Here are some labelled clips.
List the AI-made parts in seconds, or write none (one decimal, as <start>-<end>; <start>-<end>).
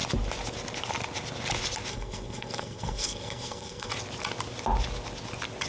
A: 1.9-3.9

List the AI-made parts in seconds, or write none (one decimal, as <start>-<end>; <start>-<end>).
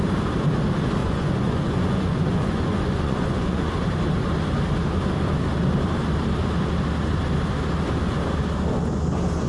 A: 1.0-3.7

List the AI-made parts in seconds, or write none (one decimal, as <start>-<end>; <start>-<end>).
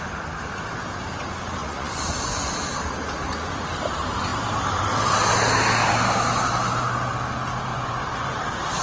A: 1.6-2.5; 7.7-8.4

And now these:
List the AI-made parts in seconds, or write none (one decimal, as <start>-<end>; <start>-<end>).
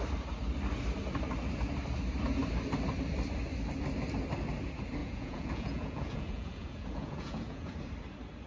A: 5.0-7.7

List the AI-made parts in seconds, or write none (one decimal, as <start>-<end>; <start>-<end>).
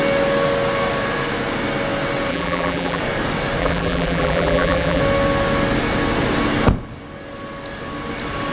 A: 2.3-3.0; 3.6-5.0